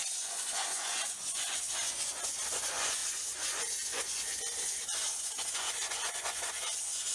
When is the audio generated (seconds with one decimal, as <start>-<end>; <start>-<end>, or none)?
0.0-7.1